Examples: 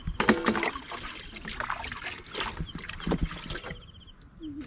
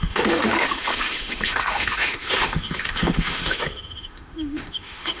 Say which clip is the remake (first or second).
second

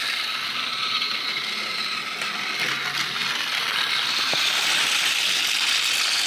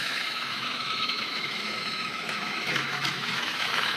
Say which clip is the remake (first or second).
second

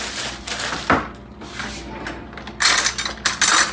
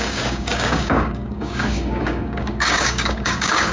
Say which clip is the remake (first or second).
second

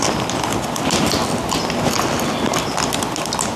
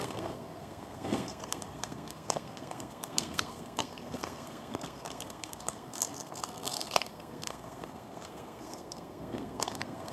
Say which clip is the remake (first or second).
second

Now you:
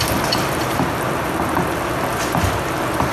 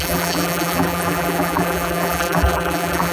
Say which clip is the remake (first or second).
second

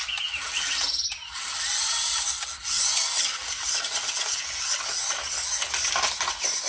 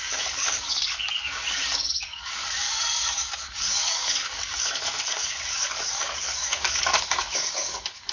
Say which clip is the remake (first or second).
second